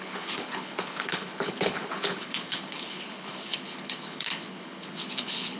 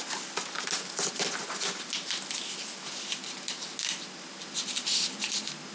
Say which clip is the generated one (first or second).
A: first